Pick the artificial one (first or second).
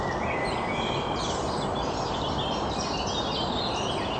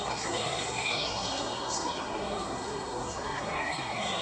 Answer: second